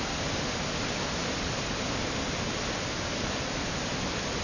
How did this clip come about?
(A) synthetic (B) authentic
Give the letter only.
B